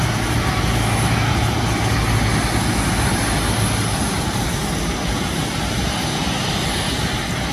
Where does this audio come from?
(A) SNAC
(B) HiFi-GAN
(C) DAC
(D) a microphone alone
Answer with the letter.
D